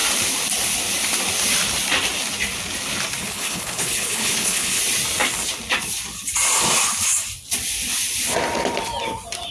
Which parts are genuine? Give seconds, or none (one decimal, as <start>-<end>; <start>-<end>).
0.0-3.2; 4.8-9.5